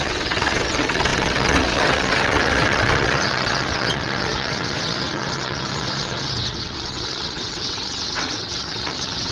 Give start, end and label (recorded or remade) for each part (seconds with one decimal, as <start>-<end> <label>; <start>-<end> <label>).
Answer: 0.0-9.3 remade